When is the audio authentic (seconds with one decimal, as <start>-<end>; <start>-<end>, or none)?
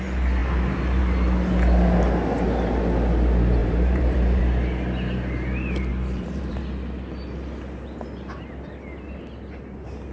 0.0-3.6; 4.4-5.9; 6.6-10.1